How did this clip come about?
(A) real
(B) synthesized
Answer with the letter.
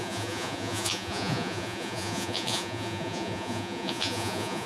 B